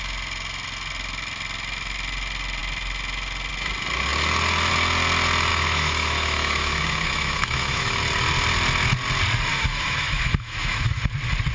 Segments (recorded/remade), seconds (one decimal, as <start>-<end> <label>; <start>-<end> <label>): 0.0-5.5 recorded; 5.5-8.0 remade; 8.0-9.5 recorded; 9.5-11.0 remade; 11.0-11.5 recorded